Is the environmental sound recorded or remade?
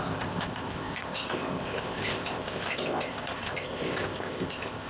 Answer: remade